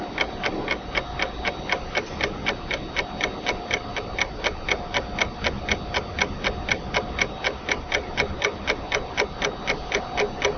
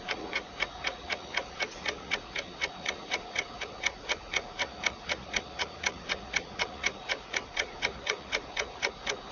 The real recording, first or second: first